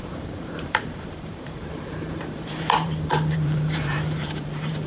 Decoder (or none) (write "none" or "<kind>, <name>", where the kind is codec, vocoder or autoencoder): vocoder, BigVGAN v2